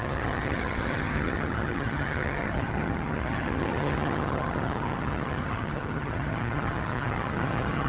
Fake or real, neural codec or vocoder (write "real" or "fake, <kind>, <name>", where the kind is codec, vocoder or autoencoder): fake, vocoder, HiFi-GAN